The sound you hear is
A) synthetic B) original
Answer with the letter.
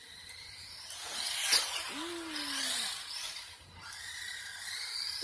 B